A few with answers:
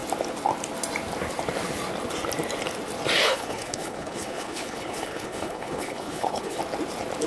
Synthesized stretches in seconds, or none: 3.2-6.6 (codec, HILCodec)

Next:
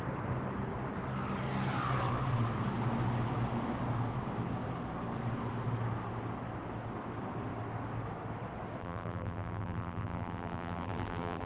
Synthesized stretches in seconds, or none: 8.8-11.5 (vocoder, BigVGAN v2)

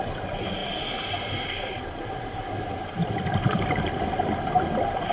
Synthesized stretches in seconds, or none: none

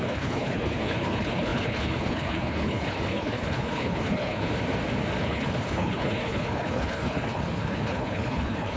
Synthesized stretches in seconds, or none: 0.0-4.5 (codec, HILCodec); 5.2-8.8

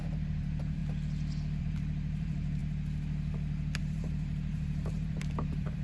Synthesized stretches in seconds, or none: 0.0-0.8 (vocoder, BigVGAN v2); 1.6-2.6; 3.8-5.8

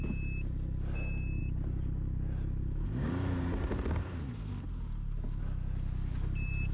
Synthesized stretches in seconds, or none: none

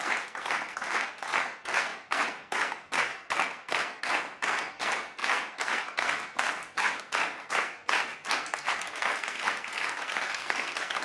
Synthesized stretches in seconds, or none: 0.0-11.0 (codec, SNAC)